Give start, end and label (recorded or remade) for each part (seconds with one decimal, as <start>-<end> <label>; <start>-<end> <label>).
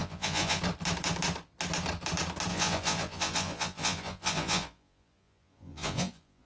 0.0-0.6 remade; 0.6-2.5 recorded; 2.5-6.5 remade